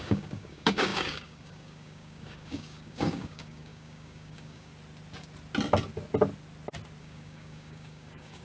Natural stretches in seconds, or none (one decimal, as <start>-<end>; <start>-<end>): 4.7-7.0